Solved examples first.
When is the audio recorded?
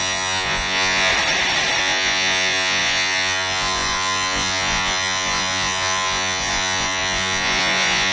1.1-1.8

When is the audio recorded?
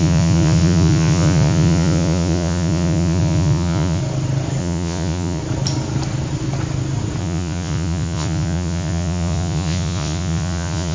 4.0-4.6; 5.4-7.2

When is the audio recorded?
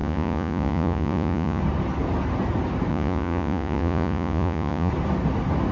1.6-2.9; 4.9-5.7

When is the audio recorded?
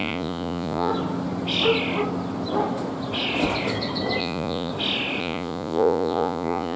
0.9-4.2; 4.7-5.2